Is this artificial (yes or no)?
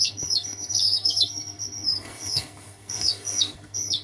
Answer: yes